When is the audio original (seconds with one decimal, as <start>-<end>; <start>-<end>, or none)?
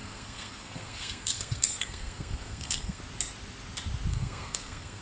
3.0-4.1